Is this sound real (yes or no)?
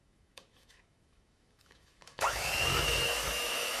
no